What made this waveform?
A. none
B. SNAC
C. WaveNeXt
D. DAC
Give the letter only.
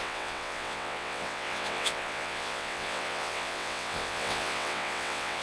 C